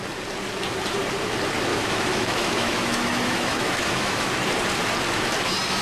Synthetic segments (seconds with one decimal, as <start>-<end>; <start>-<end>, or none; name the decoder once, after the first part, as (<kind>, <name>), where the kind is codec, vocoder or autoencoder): 1.7-4.3 (autoencoder, DAC-VAE)